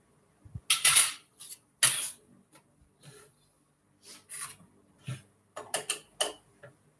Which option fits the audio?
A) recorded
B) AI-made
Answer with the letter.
A